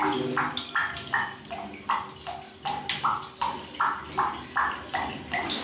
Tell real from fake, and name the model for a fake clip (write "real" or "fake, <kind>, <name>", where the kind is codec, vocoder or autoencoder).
real